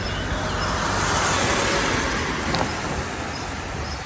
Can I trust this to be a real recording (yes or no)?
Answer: yes